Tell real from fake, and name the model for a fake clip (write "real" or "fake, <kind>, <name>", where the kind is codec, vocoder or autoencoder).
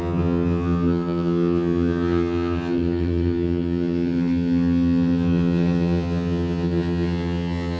fake, vocoder, HiFi-GAN